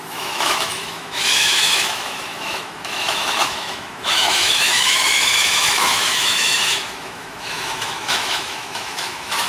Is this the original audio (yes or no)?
no